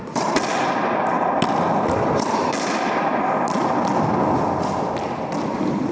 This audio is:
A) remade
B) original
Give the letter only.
B